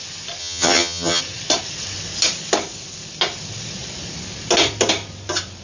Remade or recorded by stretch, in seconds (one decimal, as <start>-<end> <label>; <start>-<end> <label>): 0.0-0.4 recorded; 0.4-1.2 remade; 1.2-5.6 recorded